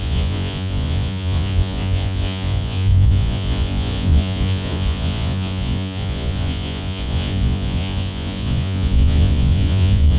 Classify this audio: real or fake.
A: fake